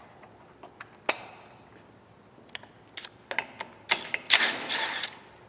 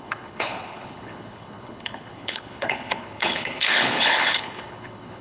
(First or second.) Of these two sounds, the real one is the first